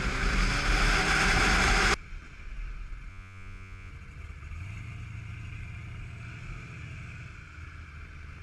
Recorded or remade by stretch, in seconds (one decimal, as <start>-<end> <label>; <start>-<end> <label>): 0.0-3.1 recorded; 3.1-3.9 remade; 3.9-8.4 recorded